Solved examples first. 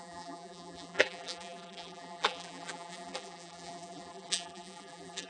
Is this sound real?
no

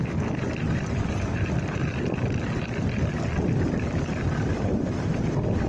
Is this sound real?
yes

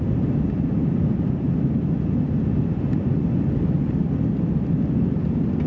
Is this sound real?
yes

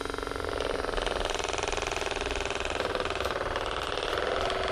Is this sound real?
yes